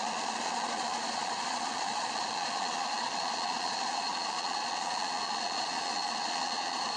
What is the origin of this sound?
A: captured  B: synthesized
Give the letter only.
B